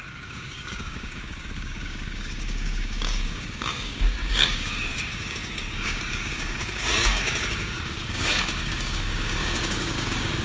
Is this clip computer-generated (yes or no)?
yes